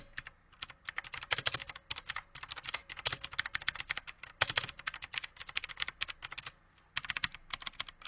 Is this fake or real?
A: real